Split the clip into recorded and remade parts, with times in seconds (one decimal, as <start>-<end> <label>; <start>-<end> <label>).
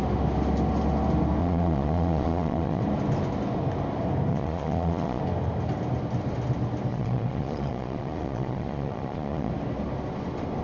0.0-1.4 recorded; 1.4-2.8 remade; 2.8-4.3 recorded; 4.3-5.2 remade; 5.2-6.9 recorded; 6.9-9.5 remade; 9.5-10.6 recorded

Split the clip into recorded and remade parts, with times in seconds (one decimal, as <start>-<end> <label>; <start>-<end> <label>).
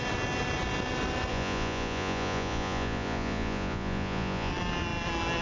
0.0-1.3 recorded; 1.3-4.5 remade; 4.5-5.4 recorded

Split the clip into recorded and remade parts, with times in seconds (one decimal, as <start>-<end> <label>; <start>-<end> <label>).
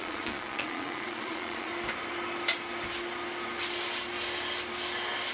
0.0-1.7 remade; 1.7-5.3 recorded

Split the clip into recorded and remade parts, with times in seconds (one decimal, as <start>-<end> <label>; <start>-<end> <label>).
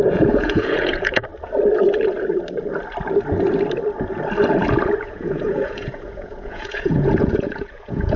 0.0-1.3 remade; 1.3-5.0 recorded; 5.0-8.2 remade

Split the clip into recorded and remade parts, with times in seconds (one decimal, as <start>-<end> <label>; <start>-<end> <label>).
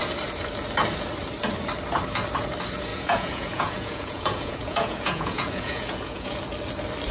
0.0-2.9 recorded; 2.9-6.4 remade; 6.4-7.1 recorded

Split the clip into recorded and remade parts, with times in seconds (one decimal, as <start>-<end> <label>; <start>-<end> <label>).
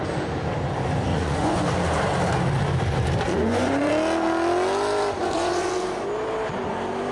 0.0-1.1 recorded; 1.1-1.7 remade; 1.7-3.3 recorded; 3.3-3.9 remade; 3.9-5.2 recorded; 5.2-5.7 remade; 5.7-7.1 recorded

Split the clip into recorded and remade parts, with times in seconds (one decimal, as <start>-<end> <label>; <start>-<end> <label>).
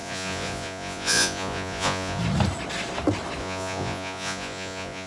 0.0-2.2 remade; 2.2-3.4 recorded; 3.4-5.1 remade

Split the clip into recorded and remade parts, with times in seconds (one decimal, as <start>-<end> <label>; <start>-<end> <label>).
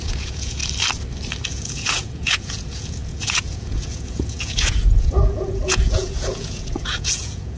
0.0-0.6 remade; 0.6-1.5 recorded; 1.5-7.6 remade